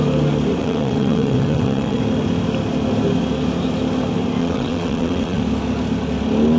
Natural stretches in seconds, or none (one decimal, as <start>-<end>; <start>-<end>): 0.0-0.6; 2.0-4.4; 5.4-6.6